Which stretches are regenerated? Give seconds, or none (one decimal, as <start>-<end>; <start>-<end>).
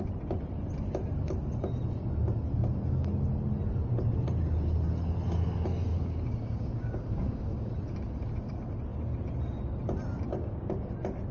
5.9-7.7; 10.3-10.9